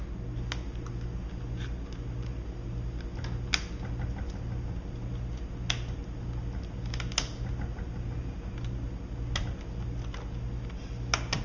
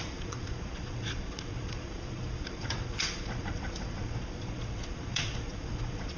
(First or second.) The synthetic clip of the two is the second